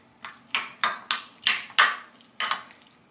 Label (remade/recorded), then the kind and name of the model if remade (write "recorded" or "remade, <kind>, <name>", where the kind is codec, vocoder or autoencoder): recorded